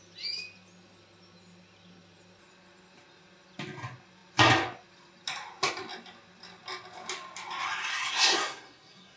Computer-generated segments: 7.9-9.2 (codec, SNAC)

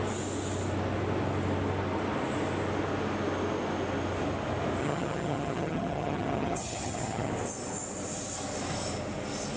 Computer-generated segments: 4.8-7.3 (vocoder, HiFi-GAN)

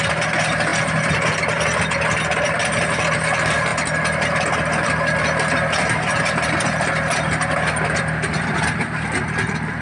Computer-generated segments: none